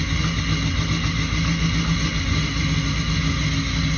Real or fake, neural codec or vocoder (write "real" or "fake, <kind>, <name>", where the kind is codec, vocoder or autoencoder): real